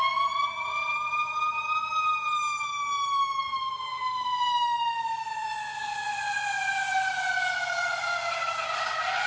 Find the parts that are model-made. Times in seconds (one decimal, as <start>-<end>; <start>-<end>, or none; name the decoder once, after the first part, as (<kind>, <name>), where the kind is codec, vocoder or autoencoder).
none